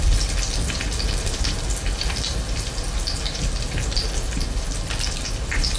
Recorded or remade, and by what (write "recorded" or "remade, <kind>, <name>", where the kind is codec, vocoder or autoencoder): recorded